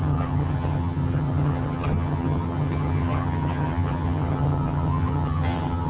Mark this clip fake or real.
fake